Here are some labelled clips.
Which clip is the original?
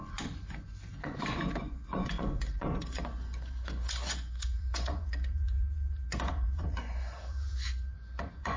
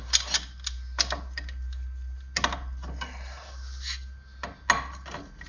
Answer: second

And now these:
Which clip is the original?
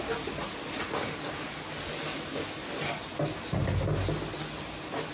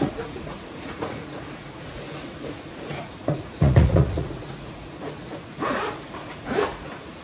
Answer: first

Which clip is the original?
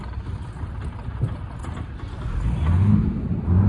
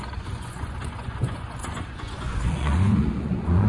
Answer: first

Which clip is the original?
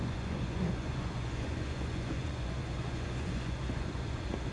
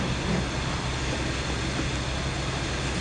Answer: second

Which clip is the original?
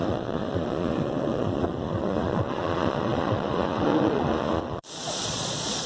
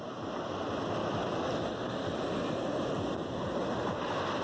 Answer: second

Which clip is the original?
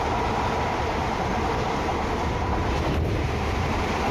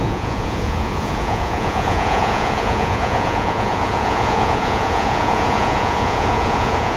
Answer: first